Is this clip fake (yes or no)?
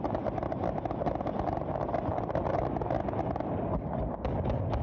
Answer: no